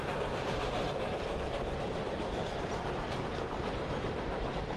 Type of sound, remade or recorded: remade